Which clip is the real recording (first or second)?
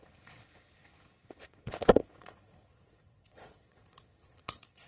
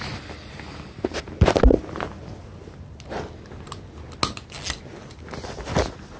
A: second